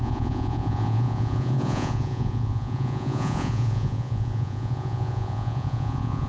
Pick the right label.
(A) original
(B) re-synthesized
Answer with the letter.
B